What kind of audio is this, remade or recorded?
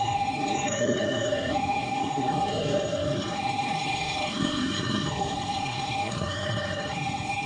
remade